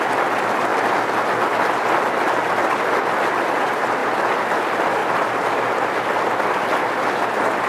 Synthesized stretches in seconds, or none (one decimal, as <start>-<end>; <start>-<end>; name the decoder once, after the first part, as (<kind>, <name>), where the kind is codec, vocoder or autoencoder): none